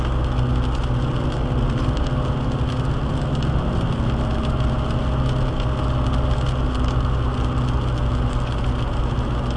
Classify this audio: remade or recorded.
recorded